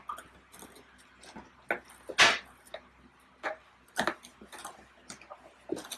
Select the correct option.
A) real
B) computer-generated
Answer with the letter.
A